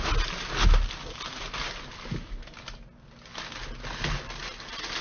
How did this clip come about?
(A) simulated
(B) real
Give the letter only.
B